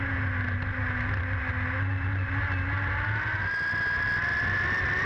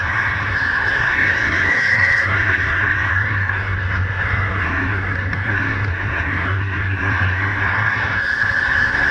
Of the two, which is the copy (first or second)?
second